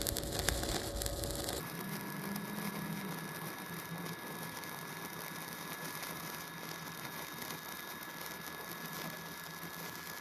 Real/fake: real